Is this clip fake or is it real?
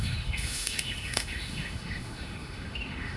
fake